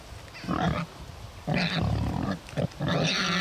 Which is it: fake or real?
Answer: real